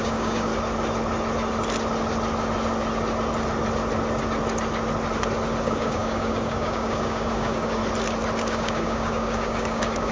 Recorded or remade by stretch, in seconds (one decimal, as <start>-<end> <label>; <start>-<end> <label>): 0.0-0.5 remade; 0.5-5.6 recorded; 5.6-7.8 remade; 7.8-8.4 recorded; 8.4-10.1 remade

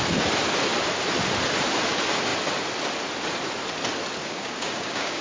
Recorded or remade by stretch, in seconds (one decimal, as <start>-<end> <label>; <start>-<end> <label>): 0.0-4.2 recorded; 4.2-5.2 remade